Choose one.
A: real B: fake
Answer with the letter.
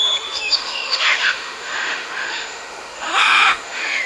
B